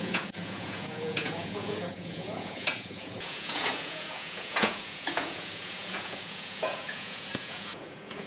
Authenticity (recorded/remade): remade